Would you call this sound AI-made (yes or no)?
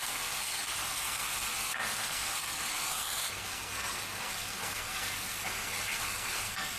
yes